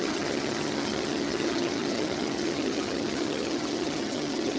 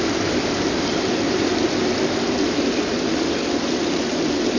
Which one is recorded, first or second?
second